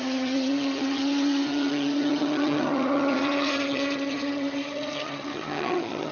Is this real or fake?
fake